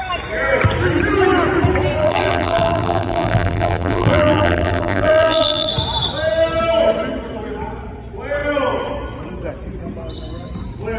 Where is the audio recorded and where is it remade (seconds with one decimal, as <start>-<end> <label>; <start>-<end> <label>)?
0.0-2.0 recorded; 2.0-5.7 remade; 5.7-11.0 recorded